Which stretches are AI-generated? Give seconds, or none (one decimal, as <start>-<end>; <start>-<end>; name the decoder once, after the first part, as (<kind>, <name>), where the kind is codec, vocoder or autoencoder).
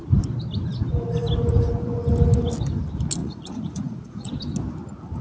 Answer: 3.2-4.3 (vocoder, Vocos)